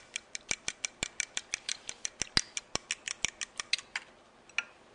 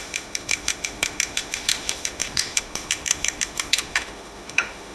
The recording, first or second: first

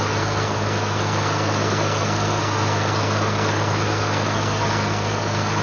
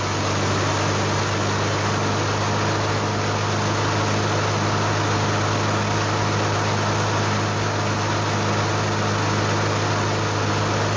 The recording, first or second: second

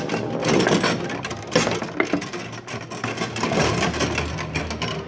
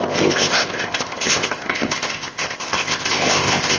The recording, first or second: first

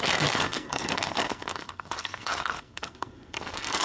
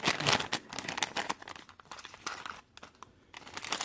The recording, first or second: second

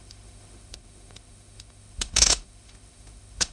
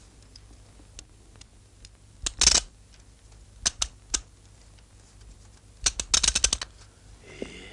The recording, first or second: second